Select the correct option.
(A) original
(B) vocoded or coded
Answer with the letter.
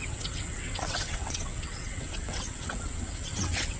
B